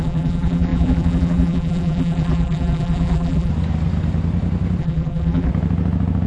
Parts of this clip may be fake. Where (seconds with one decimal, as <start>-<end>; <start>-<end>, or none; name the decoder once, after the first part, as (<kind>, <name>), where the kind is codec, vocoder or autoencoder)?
0.0-3.5 (vocoder, BigVGAN v2); 4.8-5.5